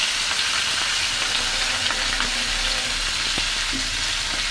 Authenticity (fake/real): real